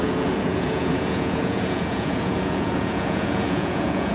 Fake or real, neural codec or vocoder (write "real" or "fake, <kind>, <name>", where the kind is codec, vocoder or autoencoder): fake, vocoder, Vocos